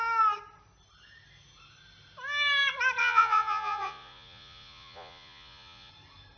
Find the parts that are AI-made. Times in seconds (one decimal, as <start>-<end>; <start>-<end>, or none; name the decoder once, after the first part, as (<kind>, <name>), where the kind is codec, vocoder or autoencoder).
3.0-5.9 (vocoder, Vocos)